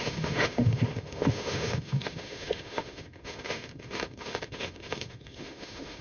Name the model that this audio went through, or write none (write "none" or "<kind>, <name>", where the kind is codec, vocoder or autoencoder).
autoencoder, DAC-VAE